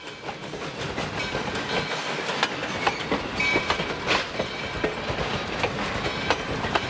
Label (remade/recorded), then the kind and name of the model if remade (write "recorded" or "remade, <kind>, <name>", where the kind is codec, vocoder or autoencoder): recorded